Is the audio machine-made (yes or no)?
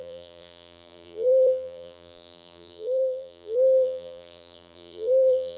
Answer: yes